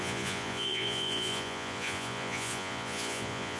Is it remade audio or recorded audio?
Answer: remade